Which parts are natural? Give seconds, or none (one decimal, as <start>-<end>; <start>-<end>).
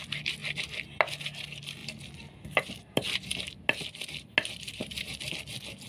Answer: 0.0-5.9